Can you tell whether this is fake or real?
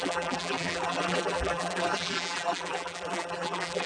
fake